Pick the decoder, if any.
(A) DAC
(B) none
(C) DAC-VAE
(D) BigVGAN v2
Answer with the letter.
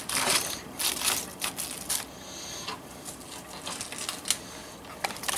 B